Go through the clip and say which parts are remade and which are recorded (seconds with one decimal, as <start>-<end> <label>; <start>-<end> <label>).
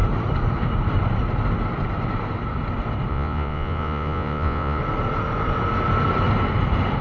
0.0-3.1 recorded; 3.1-4.8 remade; 4.8-7.0 recorded